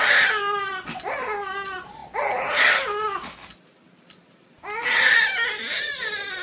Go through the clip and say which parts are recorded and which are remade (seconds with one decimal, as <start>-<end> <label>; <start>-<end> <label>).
0.0-6.4 recorded